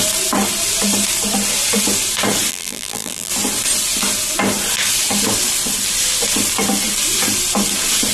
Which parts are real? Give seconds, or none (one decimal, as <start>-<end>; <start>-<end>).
0.0-2.5; 3.3-8.1